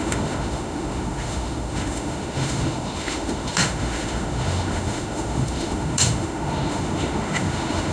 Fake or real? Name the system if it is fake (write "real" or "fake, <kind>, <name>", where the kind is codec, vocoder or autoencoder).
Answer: fake, autoencoder, DAC-VAE